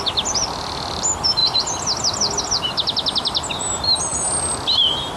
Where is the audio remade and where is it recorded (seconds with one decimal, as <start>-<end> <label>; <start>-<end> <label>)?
0.0-5.2 recorded